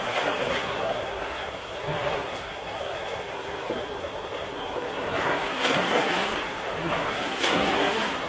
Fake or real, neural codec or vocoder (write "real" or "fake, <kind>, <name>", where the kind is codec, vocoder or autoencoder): fake, codec, SNAC